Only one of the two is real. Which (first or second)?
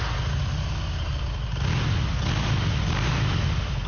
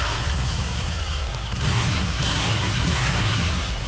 first